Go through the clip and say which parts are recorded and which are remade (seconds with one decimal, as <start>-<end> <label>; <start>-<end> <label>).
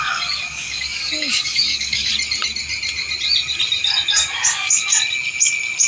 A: 0.0-2.1 remade; 2.1-4.1 recorded; 4.1-4.9 remade; 4.9-5.9 recorded